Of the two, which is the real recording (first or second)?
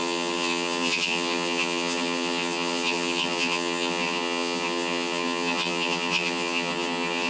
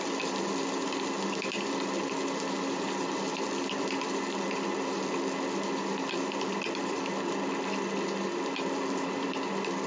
second